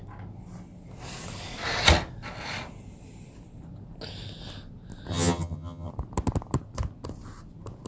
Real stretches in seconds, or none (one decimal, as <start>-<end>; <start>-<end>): 0.0-5.1; 5.9-7.9